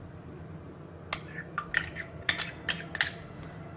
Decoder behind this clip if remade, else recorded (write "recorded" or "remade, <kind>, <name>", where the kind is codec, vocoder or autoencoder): recorded